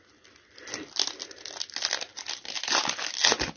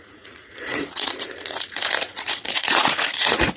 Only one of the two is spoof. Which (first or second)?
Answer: second